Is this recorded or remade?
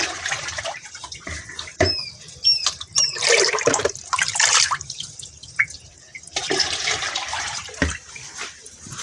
remade